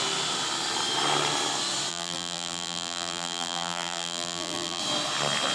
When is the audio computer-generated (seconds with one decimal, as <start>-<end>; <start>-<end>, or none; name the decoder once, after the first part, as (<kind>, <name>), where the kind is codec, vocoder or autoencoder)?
1.9-4.8 (vocoder, BigVGAN v2)

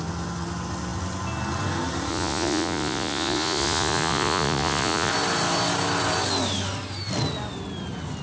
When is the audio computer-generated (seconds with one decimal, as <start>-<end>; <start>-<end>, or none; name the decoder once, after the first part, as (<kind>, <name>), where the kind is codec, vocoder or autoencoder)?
2.1-5.1 (vocoder, Vocos)

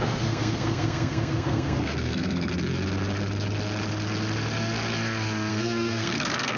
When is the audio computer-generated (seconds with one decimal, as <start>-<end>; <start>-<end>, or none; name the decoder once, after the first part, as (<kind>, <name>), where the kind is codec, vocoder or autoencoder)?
0.0-2.5 (codec, SNAC); 5.5-6.6

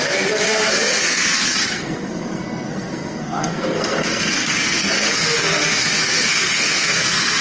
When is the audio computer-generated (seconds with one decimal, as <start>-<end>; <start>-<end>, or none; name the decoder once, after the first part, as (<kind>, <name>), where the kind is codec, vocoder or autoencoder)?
0.0-7.4 (codec, SNAC)

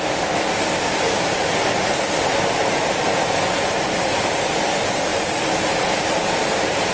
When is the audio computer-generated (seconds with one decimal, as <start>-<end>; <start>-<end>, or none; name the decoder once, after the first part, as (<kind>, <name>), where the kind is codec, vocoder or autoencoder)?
none

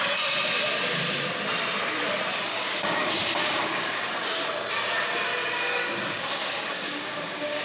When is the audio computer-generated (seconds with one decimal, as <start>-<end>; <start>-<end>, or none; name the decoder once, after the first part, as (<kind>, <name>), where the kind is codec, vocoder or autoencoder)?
2.5-4.1 (codec, DAC); 5.4-7.6

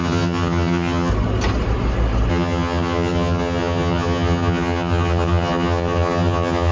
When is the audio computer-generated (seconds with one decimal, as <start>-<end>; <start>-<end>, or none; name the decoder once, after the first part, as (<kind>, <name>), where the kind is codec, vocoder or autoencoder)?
0.0-1.1 (vocoder, HiFi-GAN); 2.3-6.7